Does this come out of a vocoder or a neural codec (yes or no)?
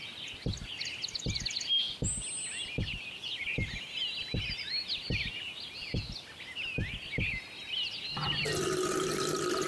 no